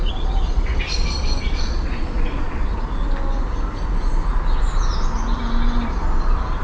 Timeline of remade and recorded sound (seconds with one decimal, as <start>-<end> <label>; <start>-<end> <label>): 0.0-0.7 remade; 0.7-1.4 recorded; 1.4-2.6 remade; 2.6-6.6 recorded